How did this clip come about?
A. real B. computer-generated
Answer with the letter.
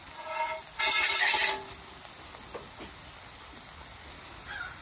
A